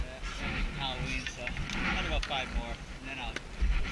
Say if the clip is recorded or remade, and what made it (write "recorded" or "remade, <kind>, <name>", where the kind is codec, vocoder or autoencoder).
recorded